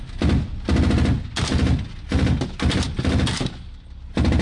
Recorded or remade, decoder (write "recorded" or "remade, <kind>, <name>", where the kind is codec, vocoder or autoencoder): recorded